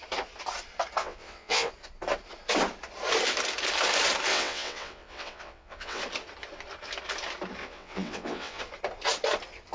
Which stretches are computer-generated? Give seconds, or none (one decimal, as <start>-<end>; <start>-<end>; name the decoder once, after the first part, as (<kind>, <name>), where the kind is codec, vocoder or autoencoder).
1.0-1.7 (vocoder, WaveNeXt); 4.3-6.0; 7.6-8.6